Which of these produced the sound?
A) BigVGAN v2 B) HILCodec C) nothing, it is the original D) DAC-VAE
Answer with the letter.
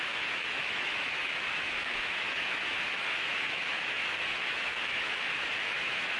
D